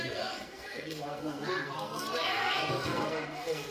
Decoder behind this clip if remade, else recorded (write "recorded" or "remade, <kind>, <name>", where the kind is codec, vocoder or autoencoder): remade, codec, SNAC